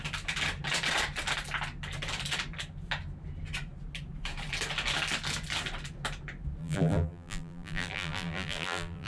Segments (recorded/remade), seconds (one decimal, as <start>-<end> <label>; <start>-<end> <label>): 0.0-6.6 recorded; 6.6-9.1 remade